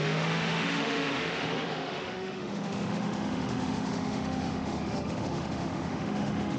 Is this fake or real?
fake